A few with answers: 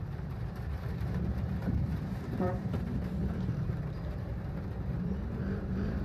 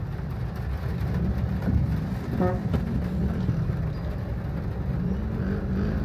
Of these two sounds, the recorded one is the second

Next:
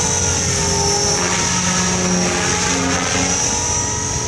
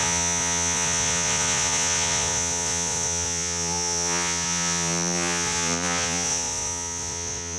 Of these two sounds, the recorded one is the first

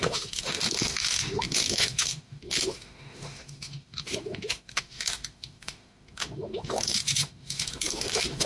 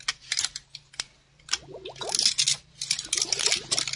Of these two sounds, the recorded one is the second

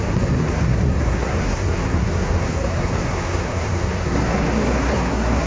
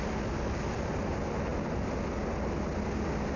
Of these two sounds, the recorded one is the second